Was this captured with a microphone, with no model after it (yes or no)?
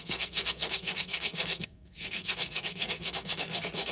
no